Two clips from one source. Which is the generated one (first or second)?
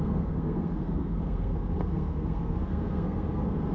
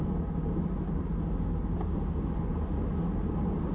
first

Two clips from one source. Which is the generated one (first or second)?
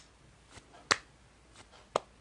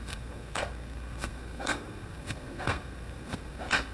second